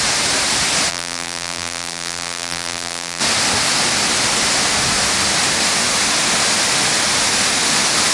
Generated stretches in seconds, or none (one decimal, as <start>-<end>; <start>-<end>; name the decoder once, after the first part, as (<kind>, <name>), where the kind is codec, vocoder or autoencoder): 0.9-3.2 (vocoder, BigVGAN v2)